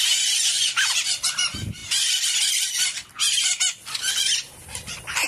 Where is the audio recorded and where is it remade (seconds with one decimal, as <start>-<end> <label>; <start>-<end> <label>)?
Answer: 0.0-5.3 remade